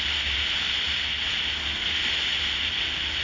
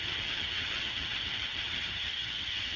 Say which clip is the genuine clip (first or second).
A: first